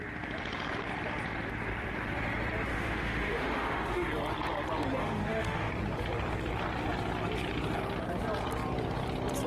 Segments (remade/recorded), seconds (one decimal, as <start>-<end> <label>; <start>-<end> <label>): 0.0-2.7 recorded; 2.7-4.1 remade; 4.1-5.0 recorded; 5.0-5.7 remade; 5.7-9.5 recorded